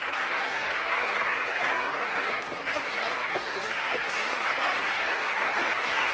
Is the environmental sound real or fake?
fake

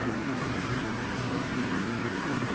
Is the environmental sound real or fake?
fake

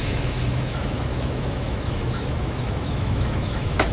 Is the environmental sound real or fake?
fake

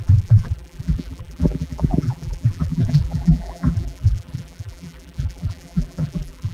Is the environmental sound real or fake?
fake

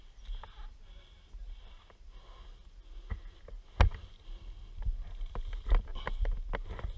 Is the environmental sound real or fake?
real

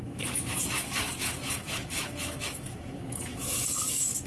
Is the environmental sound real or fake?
fake